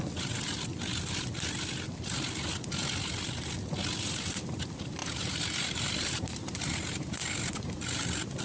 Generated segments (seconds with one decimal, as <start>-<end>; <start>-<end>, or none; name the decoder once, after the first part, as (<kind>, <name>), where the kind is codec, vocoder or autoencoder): 5.0-7.3 (vocoder, BigVGAN v2)